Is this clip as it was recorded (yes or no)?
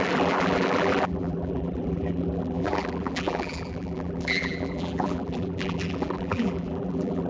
no